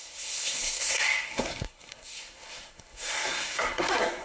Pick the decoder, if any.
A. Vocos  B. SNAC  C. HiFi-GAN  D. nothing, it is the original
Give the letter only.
B